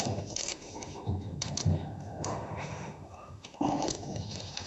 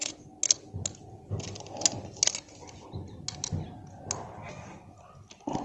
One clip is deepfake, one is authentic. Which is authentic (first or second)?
second